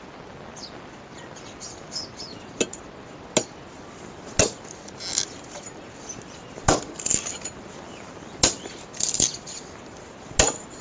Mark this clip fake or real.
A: real